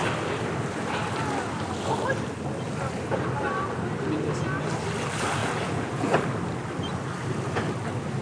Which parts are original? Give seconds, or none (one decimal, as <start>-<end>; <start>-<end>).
0.0-5.4; 6.2-8.2